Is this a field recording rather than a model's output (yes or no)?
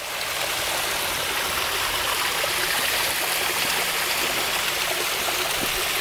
yes